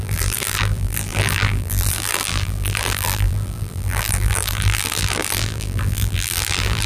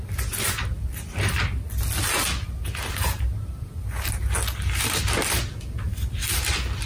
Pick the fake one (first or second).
first